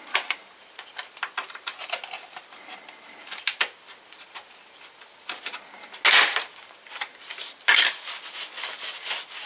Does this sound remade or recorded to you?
recorded